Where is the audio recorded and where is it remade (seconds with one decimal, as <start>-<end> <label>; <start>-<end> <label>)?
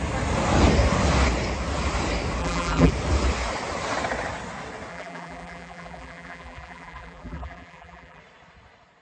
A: 0.0-2.4 recorded; 2.4-2.9 remade; 2.9-4.9 recorded; 4.9-8.2 remade; 8.2-9.0 recorded